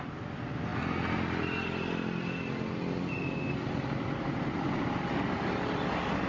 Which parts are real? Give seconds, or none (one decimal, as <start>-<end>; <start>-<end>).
0.0-6.3